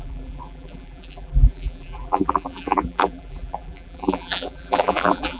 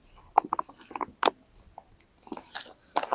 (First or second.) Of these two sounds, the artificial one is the first